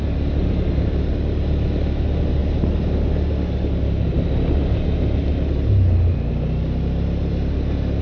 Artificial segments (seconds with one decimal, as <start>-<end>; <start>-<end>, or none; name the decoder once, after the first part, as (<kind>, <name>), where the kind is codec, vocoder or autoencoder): none

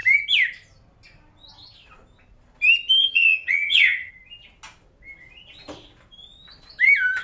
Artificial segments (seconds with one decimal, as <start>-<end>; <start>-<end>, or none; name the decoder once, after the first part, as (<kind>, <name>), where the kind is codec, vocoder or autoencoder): 3.0-4.1 (vocoder, HiFi-GAN)

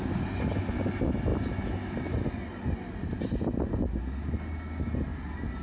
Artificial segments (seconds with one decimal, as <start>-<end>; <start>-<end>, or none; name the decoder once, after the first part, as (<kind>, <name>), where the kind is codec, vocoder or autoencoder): none

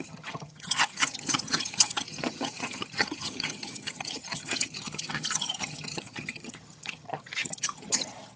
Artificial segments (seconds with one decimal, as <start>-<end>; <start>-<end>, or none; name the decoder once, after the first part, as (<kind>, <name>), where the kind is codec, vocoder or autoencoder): 0.0-8.4 (vocoder, HiFi-GAN)

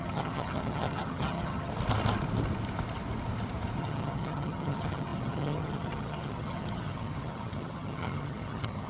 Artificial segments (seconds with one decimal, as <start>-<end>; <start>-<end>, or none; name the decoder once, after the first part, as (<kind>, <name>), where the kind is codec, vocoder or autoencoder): 0.0-1.7 (vocoder, HiFi-GAN); 3.8-8.9

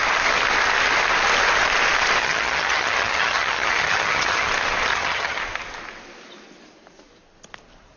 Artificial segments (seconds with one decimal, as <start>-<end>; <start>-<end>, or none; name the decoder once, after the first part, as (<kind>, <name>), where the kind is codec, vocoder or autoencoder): 2.2-4.5 (vocoder, HiFi-GAN); 4.9-5.4